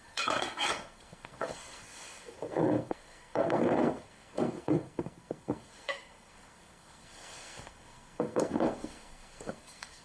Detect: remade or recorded remade